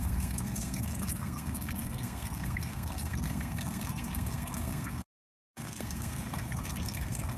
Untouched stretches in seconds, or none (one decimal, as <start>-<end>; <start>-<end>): none